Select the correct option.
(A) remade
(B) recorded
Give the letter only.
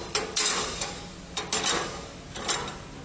B